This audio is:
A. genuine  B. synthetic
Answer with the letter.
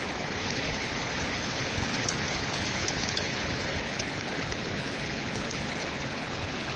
B